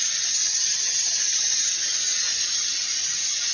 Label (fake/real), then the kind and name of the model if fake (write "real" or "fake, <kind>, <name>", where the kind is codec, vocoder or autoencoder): real